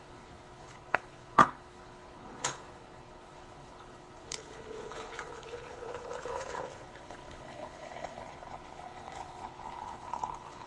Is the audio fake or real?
fake